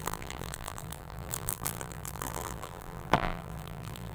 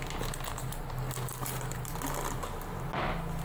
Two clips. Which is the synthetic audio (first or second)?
first